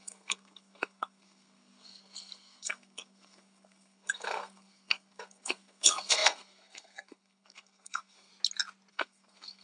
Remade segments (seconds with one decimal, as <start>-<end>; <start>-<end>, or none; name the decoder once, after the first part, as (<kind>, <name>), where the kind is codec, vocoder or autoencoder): 0.0-8.3 (codec, SNAC); 8.9-9.6